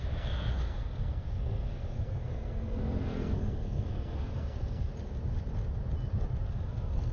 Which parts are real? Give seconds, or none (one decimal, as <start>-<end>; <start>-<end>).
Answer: 4.9-6.5